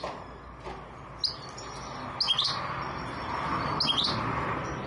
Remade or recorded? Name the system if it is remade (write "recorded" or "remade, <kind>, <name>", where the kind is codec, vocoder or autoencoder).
recorded